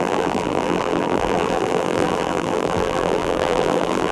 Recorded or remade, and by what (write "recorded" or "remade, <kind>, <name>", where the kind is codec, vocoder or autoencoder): remade, vocoder, BigVGAN v2